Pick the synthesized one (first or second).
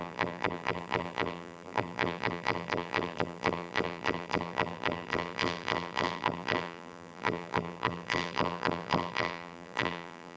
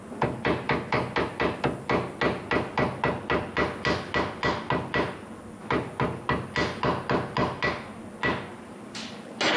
first